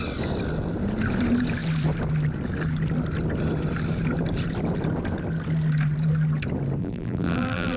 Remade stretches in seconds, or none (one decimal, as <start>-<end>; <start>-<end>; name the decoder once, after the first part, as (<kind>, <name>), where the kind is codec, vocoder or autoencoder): 6.8-7.8 (vocoder, BigVGAN v2)

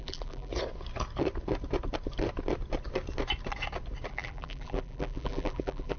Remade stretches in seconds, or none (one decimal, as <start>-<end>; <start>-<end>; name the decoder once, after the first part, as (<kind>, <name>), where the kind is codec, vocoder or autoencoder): 0.0-0.5 (vocoder, BigVGAN v2); 4.1-6.0

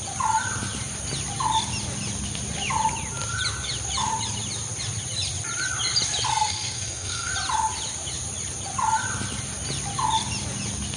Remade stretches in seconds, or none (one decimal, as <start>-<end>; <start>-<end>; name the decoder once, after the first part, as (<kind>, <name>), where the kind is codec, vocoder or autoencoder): 6.3-7.3 (codec, SNAC)